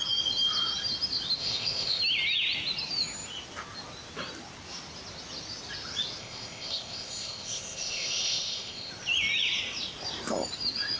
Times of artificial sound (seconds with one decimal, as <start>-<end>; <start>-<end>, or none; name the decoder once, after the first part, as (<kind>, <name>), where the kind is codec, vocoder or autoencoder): 1.4-2.0 (codec, ZipCodec); 6.2-8.9